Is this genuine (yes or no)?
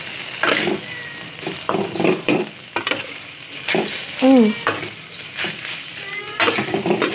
yes